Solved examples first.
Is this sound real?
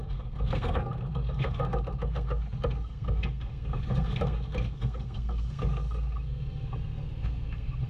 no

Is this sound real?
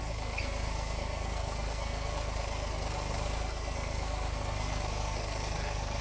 no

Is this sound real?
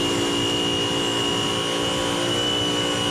yes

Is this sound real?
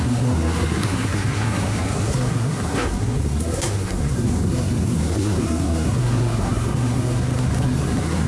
no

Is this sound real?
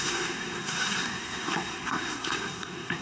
no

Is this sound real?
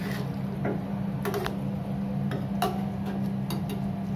yes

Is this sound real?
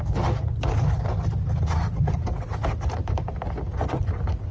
yes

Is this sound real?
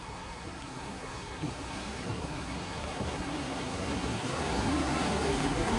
no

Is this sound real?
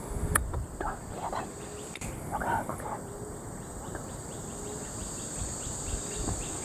yes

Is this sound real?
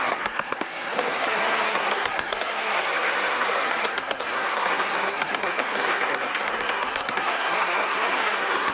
no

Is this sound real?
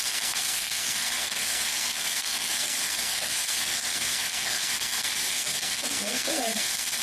no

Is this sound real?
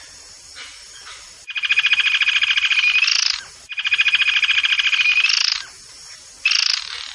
yes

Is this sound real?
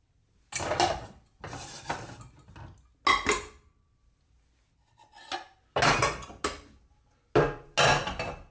yes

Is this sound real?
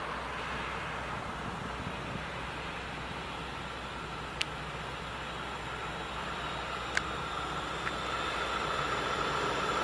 yes